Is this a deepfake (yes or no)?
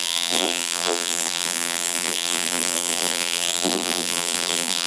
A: yes